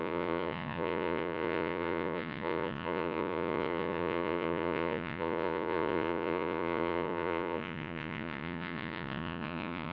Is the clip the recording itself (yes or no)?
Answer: no